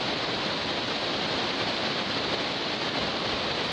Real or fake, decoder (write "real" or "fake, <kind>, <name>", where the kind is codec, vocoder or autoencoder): fake, vocoder, BigVGAN v2